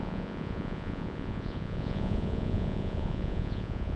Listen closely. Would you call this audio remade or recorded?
remade